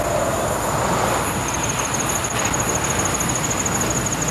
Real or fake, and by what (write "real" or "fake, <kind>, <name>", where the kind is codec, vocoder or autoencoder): real